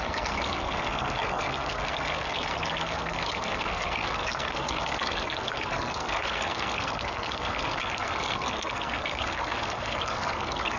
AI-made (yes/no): yes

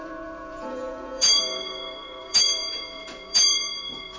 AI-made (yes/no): yes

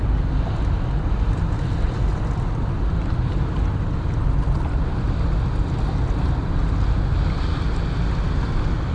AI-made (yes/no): no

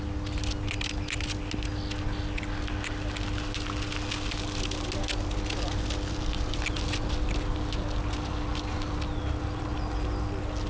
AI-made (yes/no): no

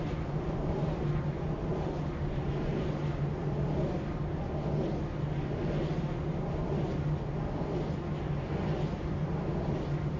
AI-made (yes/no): no